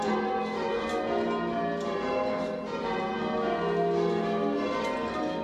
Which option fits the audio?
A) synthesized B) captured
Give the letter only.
B